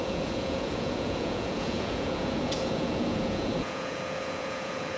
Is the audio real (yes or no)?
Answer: no